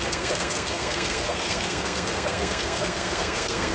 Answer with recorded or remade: remade